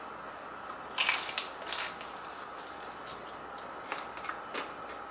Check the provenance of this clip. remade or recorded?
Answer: recorded